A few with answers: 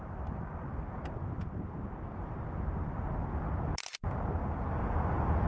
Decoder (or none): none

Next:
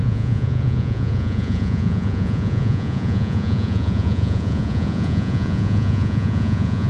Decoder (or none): vocoder, Vocos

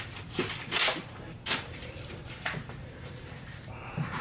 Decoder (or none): vocoder, BigVGAN v2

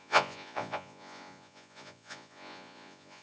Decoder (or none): vocoder, Vocos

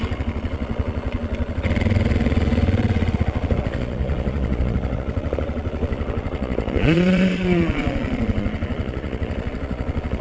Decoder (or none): vocoder, Vocos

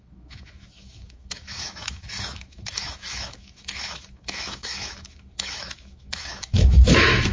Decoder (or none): autoencoder, DAC-VAE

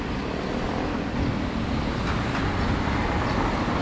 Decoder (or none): none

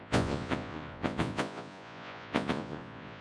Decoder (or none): vocoder, Vocos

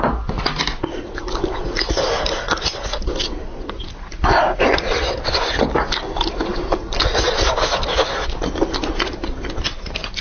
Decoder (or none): none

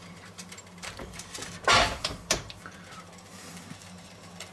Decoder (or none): vocoder, BigVGAN v2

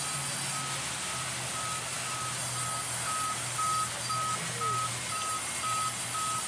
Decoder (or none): none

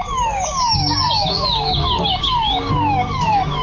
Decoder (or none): codec, DAC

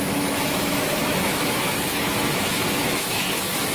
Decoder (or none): autoencoder, DAC-VAE